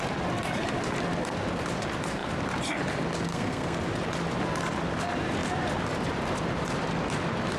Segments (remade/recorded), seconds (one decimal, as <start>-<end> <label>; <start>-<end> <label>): 0.0-3.3 recorded; 3.3-3.8 remade; 3.8-7.6 recorded